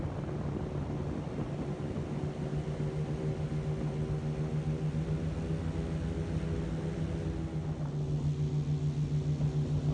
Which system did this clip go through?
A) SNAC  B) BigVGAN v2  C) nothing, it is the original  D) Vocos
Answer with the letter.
C